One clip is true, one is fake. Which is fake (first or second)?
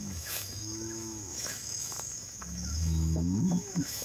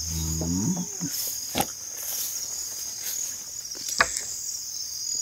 first